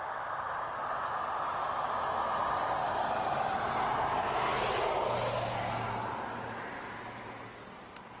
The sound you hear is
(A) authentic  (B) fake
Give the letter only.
A